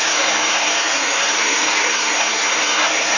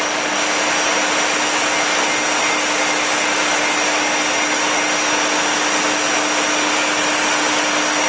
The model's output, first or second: first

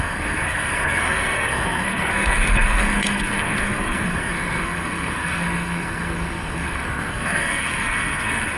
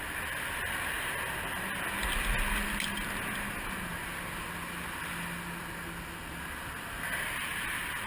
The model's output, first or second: first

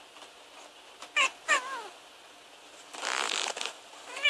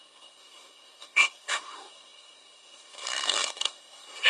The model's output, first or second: second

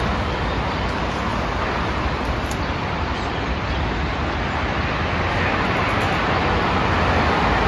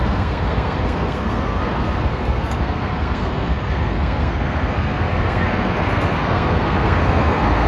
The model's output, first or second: second